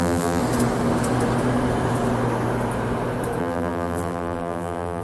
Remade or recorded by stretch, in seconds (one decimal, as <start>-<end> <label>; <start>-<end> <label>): 0.0-0.4 remade; 0.4-3.4 recorded; 3.4-5.0 remade